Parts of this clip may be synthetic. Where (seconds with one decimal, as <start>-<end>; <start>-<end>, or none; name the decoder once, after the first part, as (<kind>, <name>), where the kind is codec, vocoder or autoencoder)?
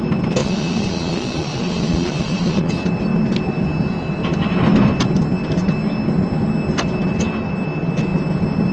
0.4-2.7 (vocoder, Vocos)